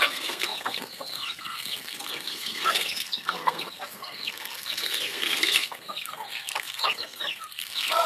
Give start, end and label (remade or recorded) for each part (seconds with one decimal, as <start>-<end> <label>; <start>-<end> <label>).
0.0-8.1 remade